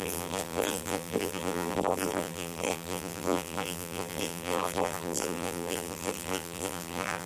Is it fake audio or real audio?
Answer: fake